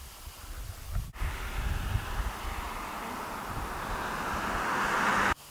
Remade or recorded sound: recorded